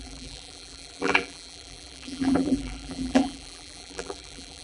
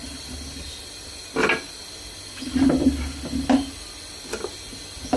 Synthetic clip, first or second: first